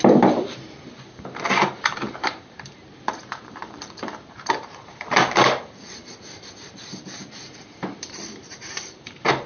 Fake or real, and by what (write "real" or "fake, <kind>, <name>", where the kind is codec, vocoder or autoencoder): fake, vocoder, BigVGAN v2